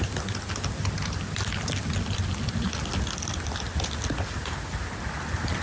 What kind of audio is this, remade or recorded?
recorded